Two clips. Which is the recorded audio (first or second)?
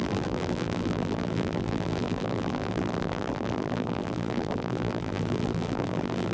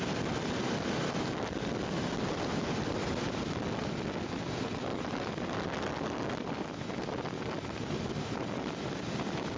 second